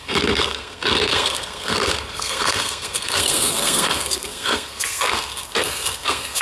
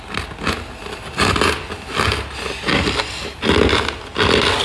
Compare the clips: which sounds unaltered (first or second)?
second